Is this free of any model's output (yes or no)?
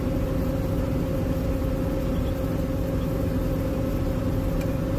yes